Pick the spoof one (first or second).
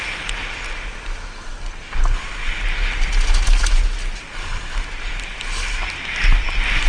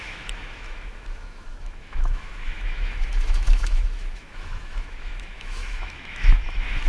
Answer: second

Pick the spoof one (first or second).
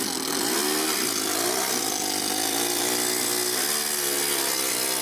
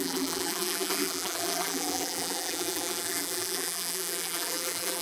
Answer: second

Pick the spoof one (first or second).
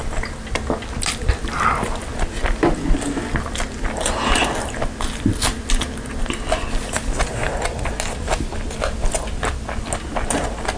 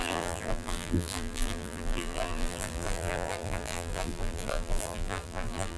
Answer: second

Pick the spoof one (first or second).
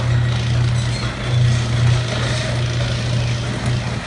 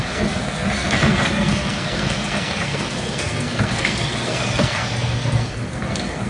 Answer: second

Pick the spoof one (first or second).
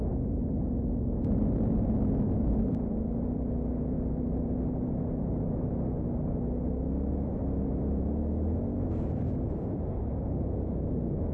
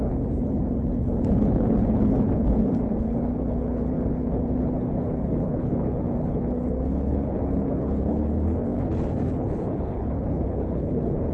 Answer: second